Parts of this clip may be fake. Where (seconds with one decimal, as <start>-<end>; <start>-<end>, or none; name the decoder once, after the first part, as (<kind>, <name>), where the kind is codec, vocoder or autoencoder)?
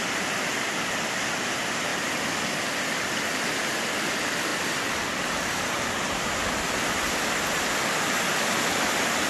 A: none